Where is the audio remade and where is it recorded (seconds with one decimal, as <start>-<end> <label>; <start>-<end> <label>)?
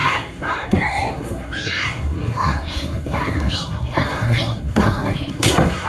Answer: 0.0-5.9 remade